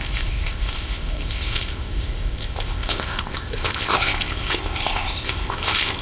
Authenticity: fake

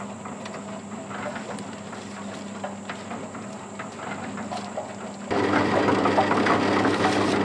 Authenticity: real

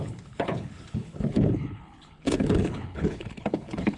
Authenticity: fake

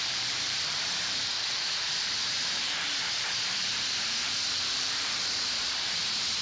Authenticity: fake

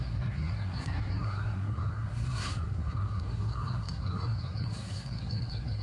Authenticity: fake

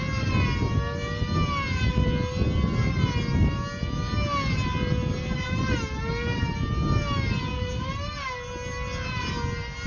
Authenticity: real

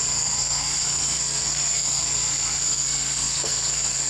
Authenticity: fake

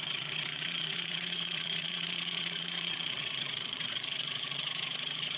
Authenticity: fake